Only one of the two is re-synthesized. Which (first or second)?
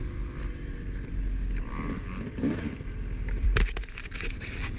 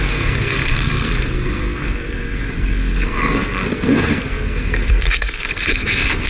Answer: second